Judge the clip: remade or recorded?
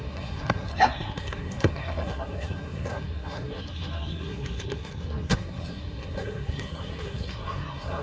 remade